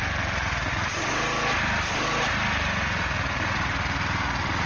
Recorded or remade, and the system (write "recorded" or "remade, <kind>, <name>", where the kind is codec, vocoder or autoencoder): recorded